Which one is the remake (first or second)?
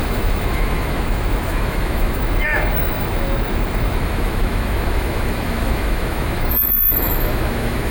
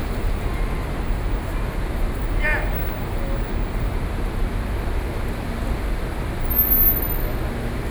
first